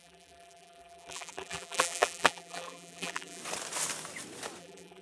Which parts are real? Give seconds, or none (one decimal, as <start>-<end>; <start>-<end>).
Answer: 3.4-4.6